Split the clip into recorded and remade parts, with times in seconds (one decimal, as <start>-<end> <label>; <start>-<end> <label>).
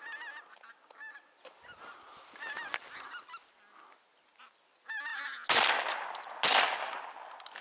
0.0-7.6 recorded